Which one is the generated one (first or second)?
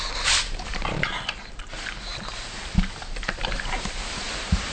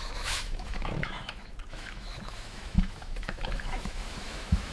second